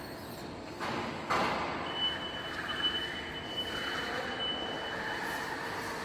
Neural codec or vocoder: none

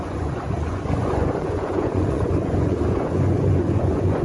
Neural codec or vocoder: vocoder, Vocos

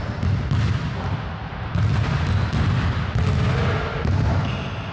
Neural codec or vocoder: none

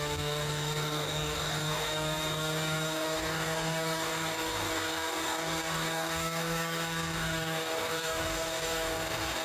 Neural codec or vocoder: codec, DAC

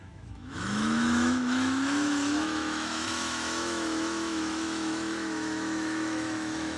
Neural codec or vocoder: autoencoder, DAC-VAE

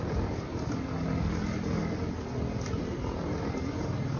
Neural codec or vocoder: none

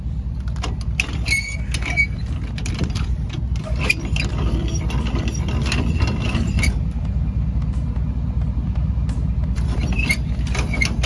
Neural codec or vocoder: none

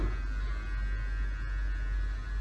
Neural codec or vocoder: none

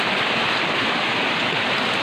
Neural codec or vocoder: none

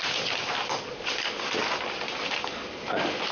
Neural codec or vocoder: none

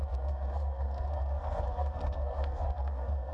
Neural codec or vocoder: codec, SNAC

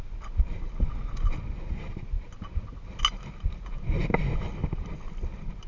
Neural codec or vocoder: none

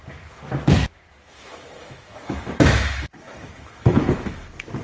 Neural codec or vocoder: autoencoder, DAC-VAE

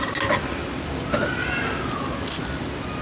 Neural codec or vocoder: none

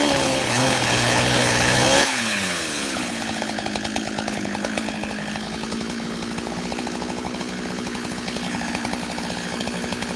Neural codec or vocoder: codec, HILCodec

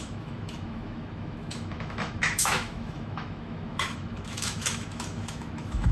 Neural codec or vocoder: autoencoder, DAC-VAE